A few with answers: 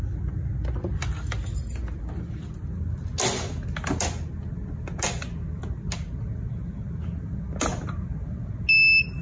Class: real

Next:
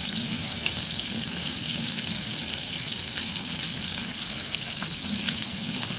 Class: fake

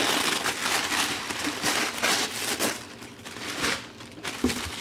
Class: real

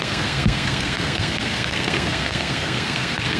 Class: fake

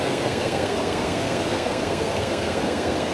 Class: fake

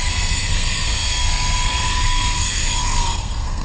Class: fake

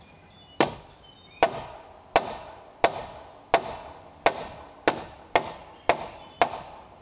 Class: real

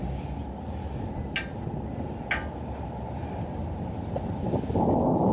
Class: real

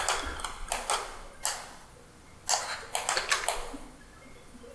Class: real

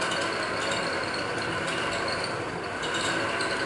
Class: real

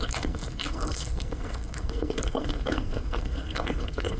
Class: fake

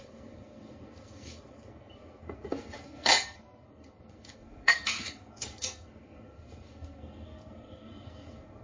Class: fake